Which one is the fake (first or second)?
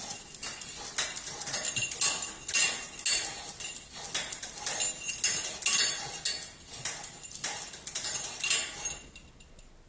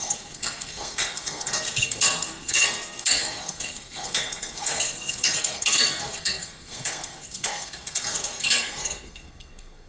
second